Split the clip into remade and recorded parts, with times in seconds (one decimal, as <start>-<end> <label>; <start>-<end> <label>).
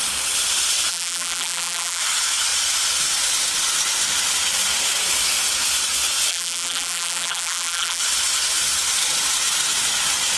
0.0-0.9 recorded; 0.9-2.0 remade; 2.0-6.3 recorded; 6.3-8.0 remade; 8.0-10.4 recorded